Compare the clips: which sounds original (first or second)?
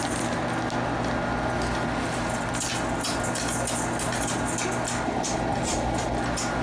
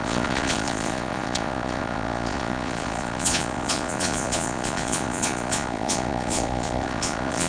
first